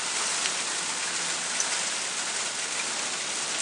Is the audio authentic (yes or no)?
yes